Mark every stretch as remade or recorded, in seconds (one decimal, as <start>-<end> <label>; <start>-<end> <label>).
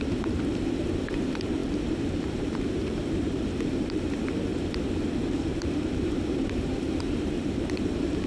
0.0-4.5 remade; 4.5-5.2 recorded; 5.2-8.3 remade